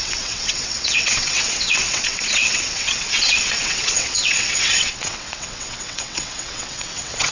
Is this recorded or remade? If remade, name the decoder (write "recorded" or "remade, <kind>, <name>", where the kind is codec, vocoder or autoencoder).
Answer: remade, vocoder, WaveNeXt